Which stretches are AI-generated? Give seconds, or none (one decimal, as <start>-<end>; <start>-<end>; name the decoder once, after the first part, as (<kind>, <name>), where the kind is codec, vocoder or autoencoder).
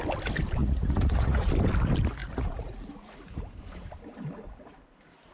0.6-1.5 (vocoder, Vocos); 2.2-3.4